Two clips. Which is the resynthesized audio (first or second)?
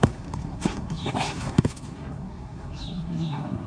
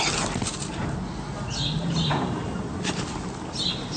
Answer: first